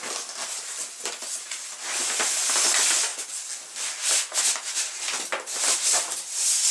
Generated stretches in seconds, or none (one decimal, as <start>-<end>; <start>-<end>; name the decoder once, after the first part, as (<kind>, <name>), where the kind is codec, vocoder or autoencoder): none